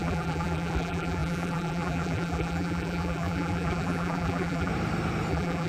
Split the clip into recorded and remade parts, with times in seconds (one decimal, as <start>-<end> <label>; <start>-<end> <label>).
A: 0.0-4.7 remade; 4.7-5.3 recorded; 5.3-5.7 remade